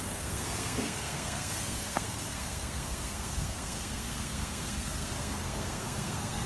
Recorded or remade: remade